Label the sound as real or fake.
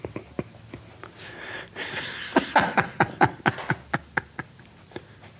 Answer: real